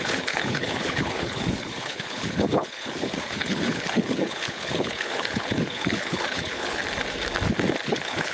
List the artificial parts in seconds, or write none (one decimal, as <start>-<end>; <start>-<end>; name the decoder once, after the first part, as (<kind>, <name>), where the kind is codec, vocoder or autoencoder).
0.0-6.8 (codec, HILCodec); 7.9-8.3